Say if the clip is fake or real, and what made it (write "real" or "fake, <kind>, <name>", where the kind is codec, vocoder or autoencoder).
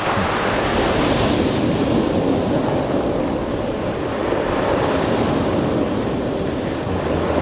real